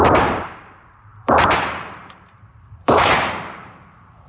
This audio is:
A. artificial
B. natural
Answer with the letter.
A